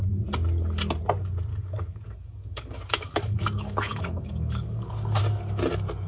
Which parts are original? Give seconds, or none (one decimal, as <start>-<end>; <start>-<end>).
0.0-1.5; 5.2-6.1